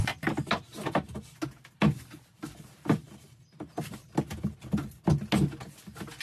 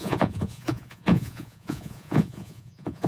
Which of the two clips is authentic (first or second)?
first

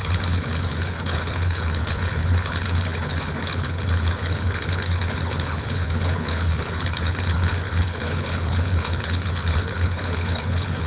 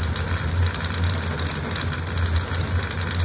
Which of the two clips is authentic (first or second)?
second